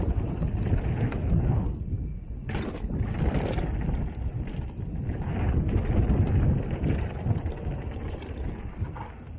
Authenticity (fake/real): real